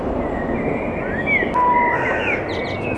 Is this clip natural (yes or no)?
yes